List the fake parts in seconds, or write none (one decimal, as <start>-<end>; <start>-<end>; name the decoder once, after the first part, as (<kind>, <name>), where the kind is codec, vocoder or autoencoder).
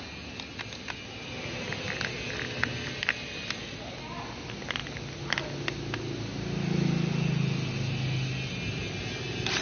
none